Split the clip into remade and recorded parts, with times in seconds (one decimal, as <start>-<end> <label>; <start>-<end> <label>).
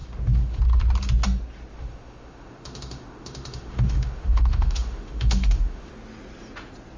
0.0-0.6 remade; 0.6-1.7 recorded; 1.7-5.9 remade; 5.9-7.0 recorded